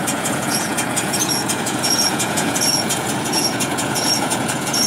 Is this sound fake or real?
fake